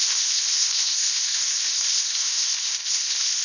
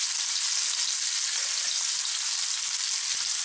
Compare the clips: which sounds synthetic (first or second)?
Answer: first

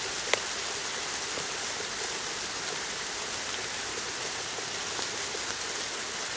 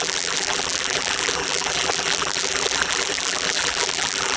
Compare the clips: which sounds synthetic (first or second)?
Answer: second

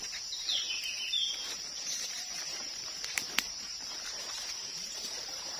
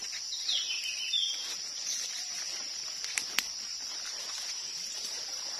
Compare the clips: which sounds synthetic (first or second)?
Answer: first